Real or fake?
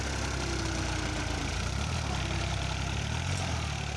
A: real